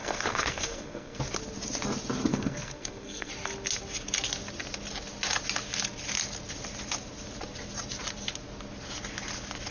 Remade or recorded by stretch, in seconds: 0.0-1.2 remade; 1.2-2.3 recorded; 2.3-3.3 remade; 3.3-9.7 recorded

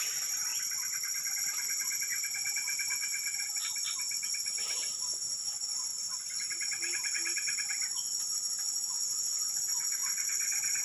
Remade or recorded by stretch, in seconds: 0.0-10.8 recorded

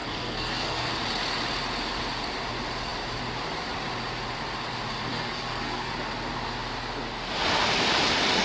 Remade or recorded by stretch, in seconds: 0.0-0.9 remade; 0.9-4.9 recorded; 4.9-5.9 remade; 5.9-8.4 recorded

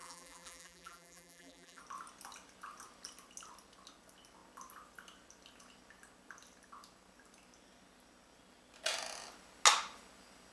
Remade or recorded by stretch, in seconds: 0.0-1.8 remade; 1.8-10.5 recorded

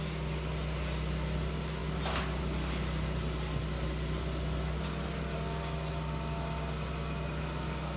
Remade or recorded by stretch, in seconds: 0.0-8.0 recorded

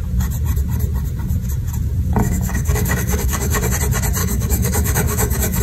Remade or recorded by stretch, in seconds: 0.0-2.2 recorded; 2.2-3.7 remade; 3.7-4.2 recorded; 4.2-5.6 remade

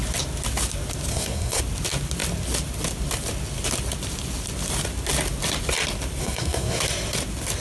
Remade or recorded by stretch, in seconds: 0.0-1.1 recorded; 1.1-1.6 remade; 1.6-6.2 recorded; 6.2-6.8 remade; 6.8-7.6 recorded